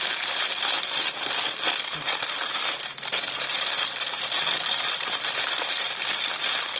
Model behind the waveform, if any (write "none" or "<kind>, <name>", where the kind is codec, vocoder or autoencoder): none